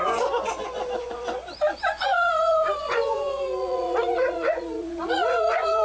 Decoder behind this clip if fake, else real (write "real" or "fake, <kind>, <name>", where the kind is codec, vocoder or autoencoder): fake, vocoder, Vocos